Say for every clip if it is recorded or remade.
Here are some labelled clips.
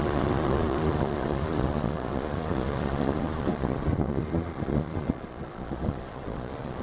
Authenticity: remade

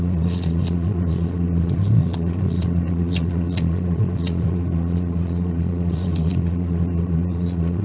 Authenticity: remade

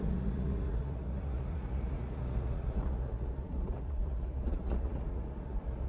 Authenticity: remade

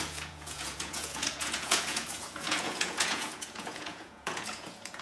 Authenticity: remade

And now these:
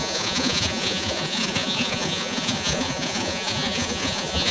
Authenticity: remade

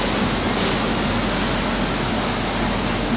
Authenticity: recorded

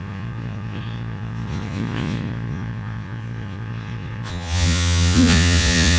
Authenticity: remade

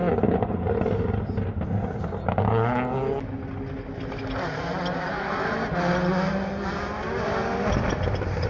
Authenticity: recorded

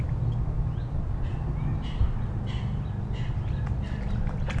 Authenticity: recorded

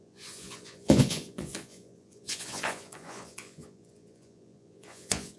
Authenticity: remade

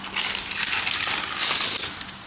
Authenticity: recorded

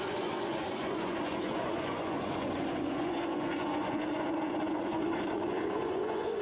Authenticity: remade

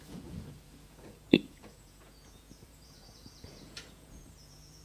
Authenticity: remade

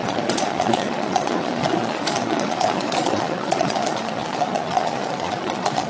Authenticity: remade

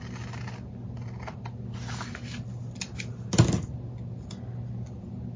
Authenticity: recorded